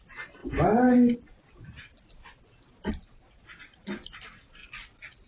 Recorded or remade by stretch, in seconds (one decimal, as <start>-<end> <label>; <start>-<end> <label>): 0.0-4.6 remade; 4.6-5.3 recorded